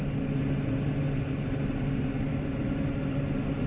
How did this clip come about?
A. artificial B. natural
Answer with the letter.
B